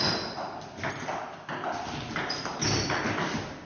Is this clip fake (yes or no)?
no